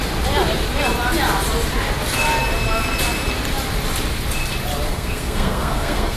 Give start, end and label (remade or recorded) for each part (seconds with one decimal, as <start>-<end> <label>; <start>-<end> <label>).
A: 0.0-4.9 recorded; 4.9-6.2 remade